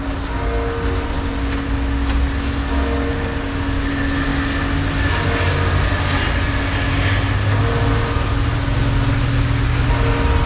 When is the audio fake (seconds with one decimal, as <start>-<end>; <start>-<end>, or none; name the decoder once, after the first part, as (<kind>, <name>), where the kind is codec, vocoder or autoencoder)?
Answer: none